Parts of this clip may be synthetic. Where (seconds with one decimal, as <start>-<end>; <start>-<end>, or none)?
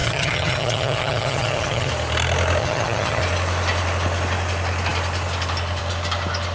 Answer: 0.0-1.9; 2.6-3.2